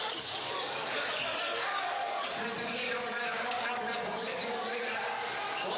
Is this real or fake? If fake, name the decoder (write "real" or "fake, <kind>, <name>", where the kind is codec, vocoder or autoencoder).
fake, codec, DAC